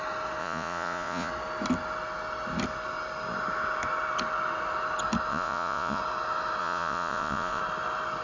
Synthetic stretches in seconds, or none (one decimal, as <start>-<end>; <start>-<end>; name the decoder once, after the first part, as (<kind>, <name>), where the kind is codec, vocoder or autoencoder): 0.4-1.3 (vocoder, Vocos); 5.3-6.0; 6.6-7.6